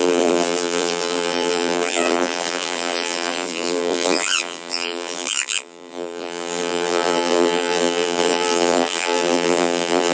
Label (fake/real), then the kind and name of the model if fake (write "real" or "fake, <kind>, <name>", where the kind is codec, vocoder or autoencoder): fake, vocoder, BigVGAN v2